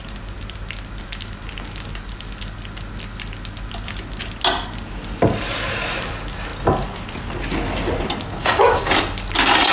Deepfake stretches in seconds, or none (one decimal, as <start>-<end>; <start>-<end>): 8.4-8.9